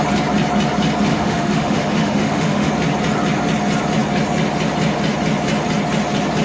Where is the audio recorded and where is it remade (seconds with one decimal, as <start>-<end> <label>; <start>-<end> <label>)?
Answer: 0.0-1.1 recorded; 1.1-2.7 remade; 2.7-6.4 recorded